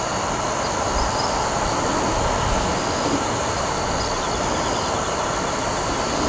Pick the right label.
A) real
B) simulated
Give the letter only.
A